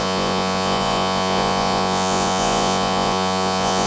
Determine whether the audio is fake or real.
fake